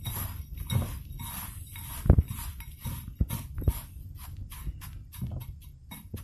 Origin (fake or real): real